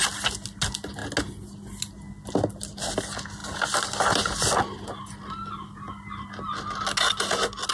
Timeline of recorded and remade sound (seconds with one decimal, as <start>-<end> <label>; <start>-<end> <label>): 0.0-7.7 recorded